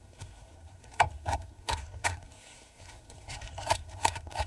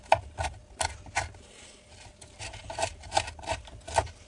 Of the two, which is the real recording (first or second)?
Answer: second